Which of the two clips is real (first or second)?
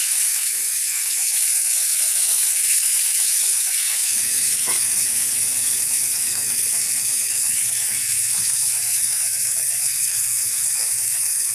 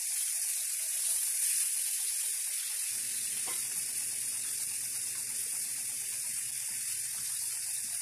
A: second